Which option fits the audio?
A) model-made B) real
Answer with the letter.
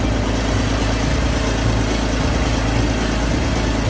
B